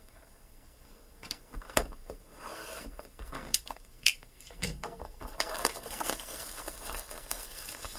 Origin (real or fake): fake